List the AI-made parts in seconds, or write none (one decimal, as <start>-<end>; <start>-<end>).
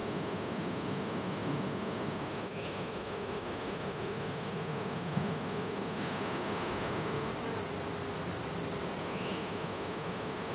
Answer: 0.0-7.3; 9.0-10.5